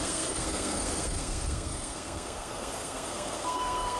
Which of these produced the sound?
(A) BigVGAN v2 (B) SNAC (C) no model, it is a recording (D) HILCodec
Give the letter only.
B